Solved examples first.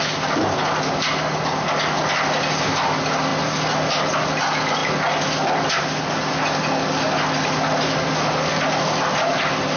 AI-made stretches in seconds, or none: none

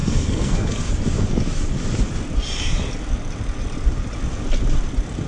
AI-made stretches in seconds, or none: 0.0-0.9 (codec, SNAC)

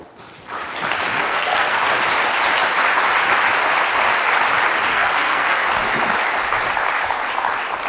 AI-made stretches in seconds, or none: 1.1-1.8 (codec, SNAC); 4.9-5.7

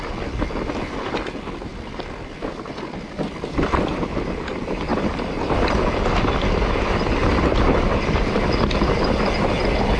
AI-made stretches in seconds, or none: 1.7-2.7 (vocoder, BigVGAN v2); 4.9-5.6

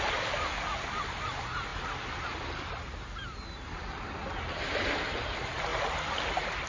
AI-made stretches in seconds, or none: none

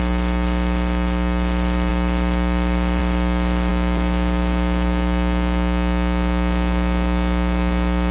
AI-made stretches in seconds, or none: 3.7-8.1 (autoencoder, DAC-VAE)

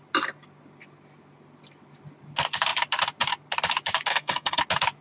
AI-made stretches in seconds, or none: 4.1-4.6 (codec, SNAC)

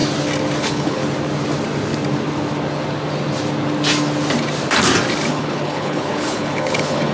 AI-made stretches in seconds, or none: 0.6-1.0 (codec, HILCodec); 5.3-7.1